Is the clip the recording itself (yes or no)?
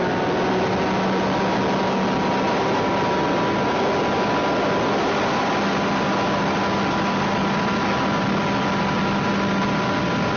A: yes